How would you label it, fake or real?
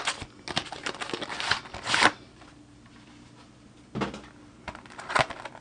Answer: real